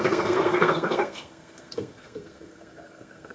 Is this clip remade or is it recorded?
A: remade